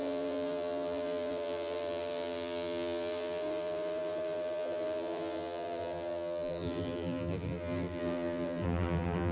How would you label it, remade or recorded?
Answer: remade